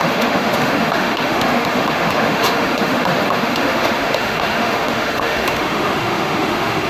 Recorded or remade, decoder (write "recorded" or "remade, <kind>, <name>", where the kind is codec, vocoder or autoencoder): remade, autoencoder, DAC-VAE